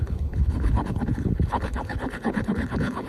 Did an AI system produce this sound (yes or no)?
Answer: yes